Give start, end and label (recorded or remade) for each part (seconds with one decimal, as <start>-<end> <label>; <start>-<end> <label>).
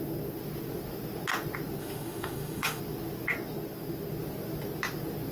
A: 0.0-1.8 recorded; 1.8-2.8 remade; 2.8-5.3 recorded